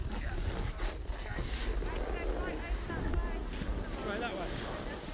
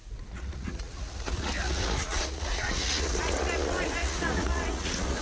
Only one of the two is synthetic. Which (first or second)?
second